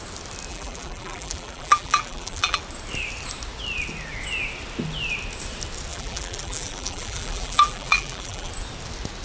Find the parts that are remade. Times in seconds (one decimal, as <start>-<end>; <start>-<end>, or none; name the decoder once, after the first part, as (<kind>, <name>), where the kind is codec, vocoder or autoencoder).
0.5-2.6 (vocoder, BigVGAN v2); 5.9-8.5